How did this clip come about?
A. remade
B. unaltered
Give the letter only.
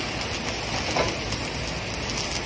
B